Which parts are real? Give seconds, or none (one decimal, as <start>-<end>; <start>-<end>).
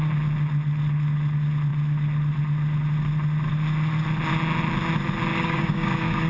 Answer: 0.0-5.3